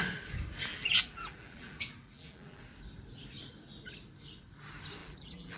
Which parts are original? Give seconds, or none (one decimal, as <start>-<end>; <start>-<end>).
0.0-0.7; 2.6-5.0